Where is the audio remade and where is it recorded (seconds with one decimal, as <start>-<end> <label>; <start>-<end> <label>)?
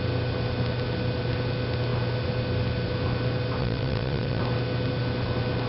0.0-3.6 recorded; 3.6-4.4 remade; 4.4-5.7 recorded